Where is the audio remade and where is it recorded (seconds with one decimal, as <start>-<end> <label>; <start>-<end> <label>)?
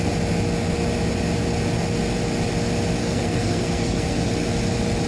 0.0-3.0 recorded; 3.0-4.3 remade; 4.3-5.1 recorded